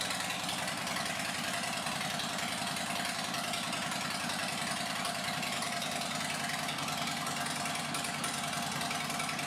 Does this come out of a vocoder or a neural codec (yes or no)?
no